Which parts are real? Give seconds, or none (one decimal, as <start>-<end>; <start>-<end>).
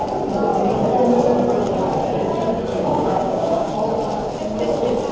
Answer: 0.0-2.7; 3.7-5.1